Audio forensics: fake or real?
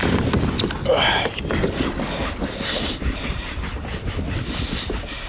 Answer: real